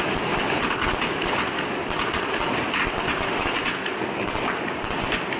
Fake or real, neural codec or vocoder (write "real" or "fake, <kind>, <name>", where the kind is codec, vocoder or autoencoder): real